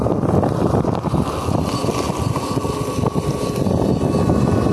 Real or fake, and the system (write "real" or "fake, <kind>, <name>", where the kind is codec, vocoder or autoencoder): real